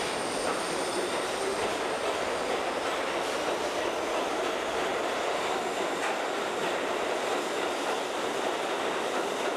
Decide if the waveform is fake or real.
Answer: real